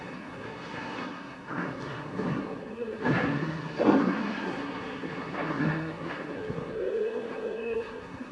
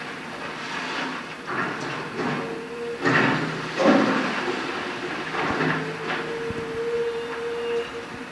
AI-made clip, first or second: first